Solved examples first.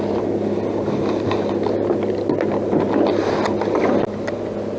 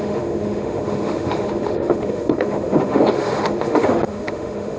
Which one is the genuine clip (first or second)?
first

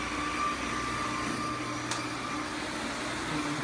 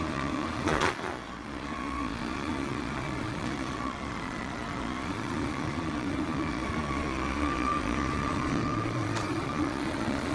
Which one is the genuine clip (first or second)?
first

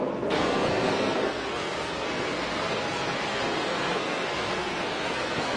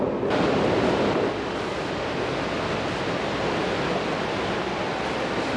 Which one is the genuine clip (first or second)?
second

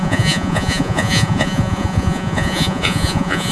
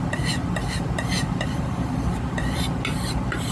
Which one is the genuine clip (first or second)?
second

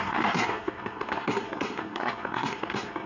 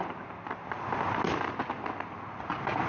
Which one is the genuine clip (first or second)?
second